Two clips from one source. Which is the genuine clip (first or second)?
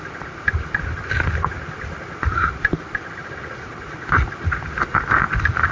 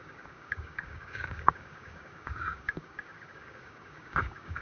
first